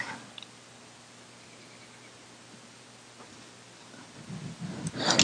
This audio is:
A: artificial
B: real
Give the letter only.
B